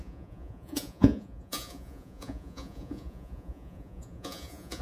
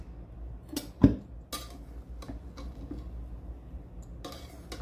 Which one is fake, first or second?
first